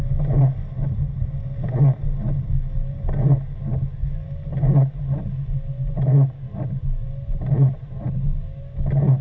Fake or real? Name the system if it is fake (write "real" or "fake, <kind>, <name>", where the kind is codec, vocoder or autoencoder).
real